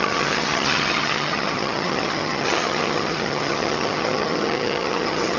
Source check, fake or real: fake